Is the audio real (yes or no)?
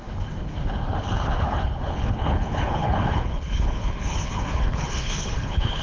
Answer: no